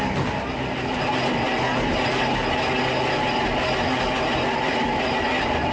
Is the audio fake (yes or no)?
no